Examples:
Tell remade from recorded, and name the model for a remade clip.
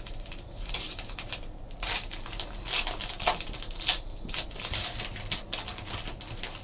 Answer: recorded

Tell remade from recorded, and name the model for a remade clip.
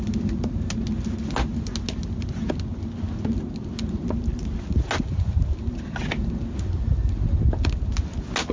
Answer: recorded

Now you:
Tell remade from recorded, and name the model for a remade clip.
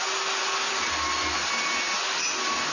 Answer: recorded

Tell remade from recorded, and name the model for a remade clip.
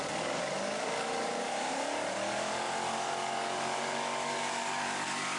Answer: remade, codec, DAC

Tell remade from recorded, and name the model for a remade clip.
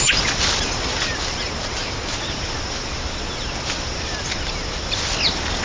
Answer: recorded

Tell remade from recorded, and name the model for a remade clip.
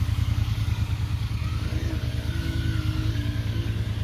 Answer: remade, codec, DAC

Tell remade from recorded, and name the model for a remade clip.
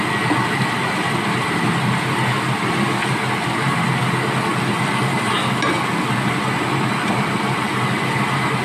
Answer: recorded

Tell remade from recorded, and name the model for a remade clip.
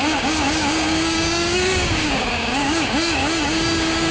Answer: remade, codec, DAC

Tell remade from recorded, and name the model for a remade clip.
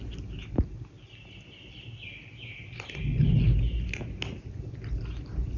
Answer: recorded